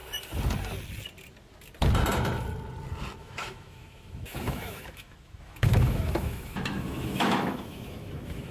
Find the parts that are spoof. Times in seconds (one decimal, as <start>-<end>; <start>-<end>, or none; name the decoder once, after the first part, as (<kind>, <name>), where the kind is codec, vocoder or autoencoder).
3.2-8.5 (autoencoder, DAC-VAE)